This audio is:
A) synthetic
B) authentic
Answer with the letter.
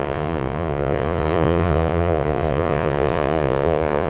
A